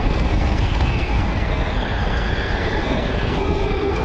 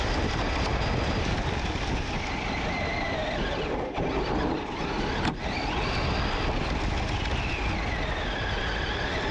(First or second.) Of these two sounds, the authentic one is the second